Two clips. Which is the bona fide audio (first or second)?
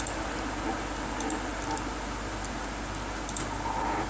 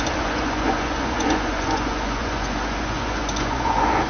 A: first